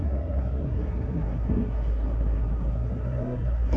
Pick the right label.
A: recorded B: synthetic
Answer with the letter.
B